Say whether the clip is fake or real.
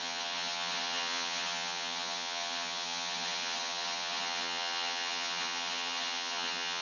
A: fake